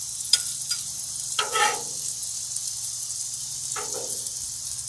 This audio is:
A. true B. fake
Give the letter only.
A